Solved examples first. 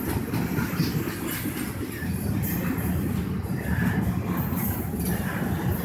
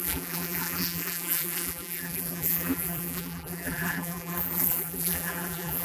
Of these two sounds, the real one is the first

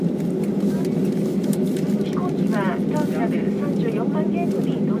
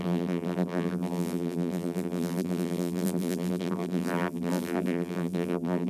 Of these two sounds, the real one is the first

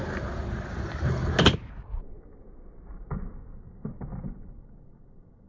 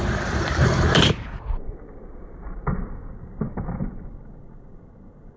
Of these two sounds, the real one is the first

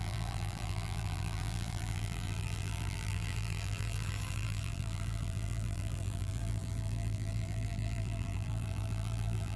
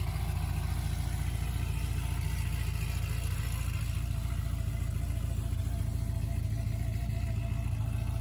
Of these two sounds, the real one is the second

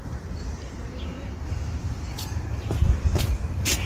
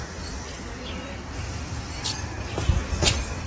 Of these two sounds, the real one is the second